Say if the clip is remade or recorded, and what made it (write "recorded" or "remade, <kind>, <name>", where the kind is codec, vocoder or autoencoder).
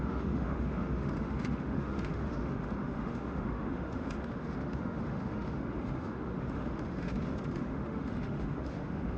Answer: remade, autoencoder, DAC-VAE